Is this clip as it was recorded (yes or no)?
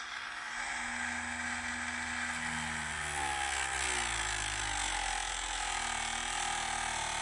yes